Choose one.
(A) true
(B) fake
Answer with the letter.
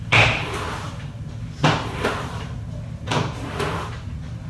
A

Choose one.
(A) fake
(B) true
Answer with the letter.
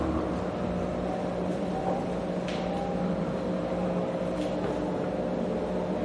B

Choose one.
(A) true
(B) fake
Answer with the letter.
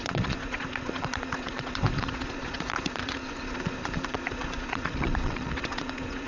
B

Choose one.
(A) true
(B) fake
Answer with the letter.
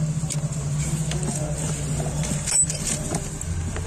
A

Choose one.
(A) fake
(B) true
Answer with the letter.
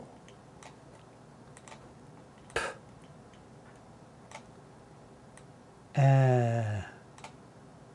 B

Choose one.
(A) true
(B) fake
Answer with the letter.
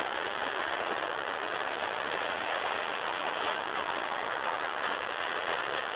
B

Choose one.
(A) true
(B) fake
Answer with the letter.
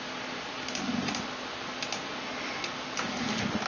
A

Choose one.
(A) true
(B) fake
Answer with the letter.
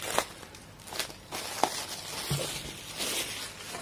A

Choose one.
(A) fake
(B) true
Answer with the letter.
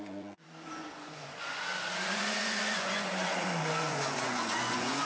A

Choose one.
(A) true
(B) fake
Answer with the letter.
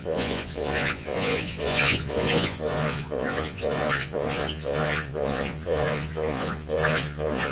B